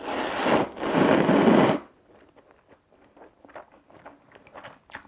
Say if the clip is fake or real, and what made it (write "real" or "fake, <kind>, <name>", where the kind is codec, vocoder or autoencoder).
real